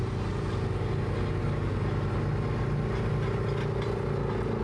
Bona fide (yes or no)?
yes